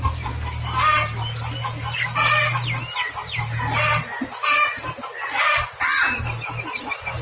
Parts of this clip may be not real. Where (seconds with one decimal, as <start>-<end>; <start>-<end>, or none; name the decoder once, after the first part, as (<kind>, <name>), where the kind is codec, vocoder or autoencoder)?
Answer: none